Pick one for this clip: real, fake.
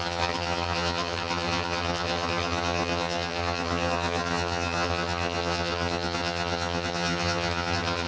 fake